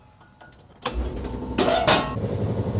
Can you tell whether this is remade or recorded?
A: recorded